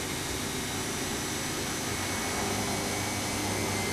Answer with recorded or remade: recorded